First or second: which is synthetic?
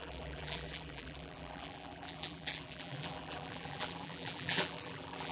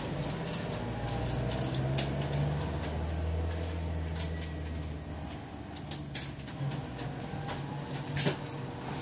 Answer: first